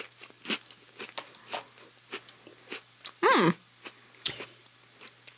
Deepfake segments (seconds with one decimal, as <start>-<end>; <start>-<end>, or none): 2.5-5.0